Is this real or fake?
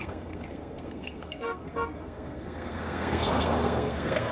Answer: fake